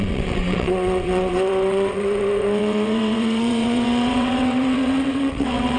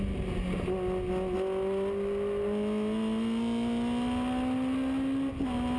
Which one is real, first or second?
second